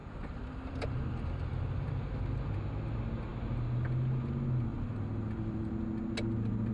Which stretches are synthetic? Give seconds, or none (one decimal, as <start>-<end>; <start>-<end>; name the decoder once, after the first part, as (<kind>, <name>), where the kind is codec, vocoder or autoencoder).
0.0-2.1 (vocoder, BigVGAN v2); 4.7-5.7